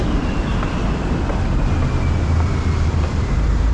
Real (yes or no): no